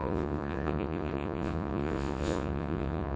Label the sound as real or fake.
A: fake